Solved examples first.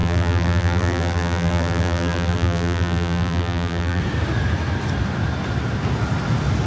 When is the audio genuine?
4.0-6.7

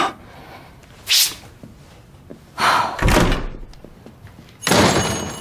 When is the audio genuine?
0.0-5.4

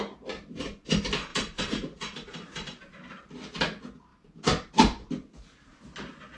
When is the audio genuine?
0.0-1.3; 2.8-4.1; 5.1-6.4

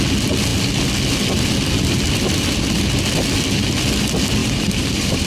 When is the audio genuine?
0.0-4.4

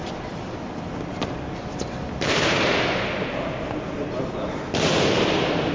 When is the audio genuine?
none

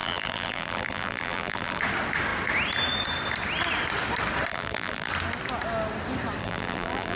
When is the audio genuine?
1.8-4.5; 5.1-6.4

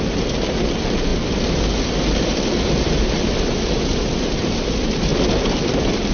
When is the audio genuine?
0.0-1.1; 2.9-5.1